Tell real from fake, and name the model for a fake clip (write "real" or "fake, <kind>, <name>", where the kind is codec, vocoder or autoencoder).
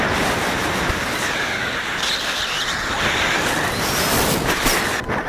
real